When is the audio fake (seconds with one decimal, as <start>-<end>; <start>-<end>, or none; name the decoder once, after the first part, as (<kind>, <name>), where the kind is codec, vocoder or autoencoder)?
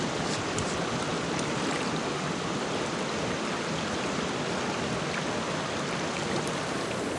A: none